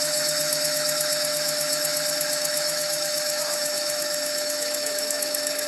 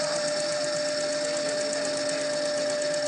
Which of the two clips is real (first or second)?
second